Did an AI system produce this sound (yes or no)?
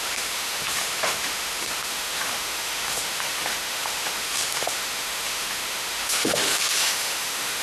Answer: yes